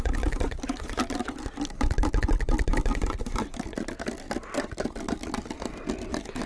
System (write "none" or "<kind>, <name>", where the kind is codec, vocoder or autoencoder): none